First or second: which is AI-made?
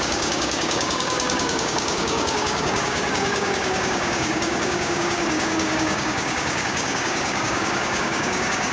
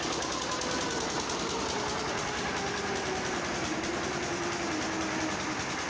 first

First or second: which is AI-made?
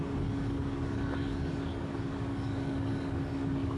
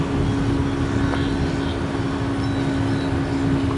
first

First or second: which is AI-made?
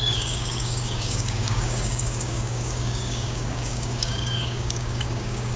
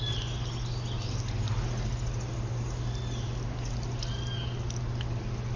first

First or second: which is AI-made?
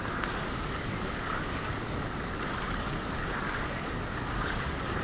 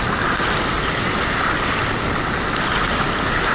first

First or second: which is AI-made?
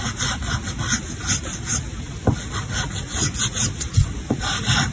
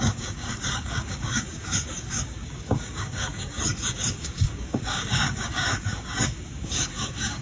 second